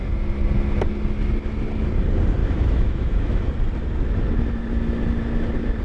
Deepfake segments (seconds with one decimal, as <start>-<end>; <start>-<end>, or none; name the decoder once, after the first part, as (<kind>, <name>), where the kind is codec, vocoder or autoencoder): 2.4-3.5 (autoencoder, DAC-VAE)